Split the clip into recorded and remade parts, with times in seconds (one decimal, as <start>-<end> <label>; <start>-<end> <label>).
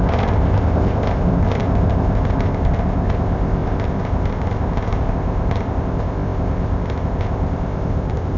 0.0-8.4 remade